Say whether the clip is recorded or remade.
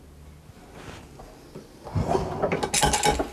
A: recorded